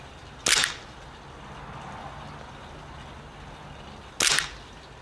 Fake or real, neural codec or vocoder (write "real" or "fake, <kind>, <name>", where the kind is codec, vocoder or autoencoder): real